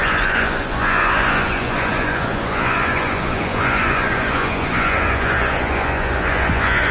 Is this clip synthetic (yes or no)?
yes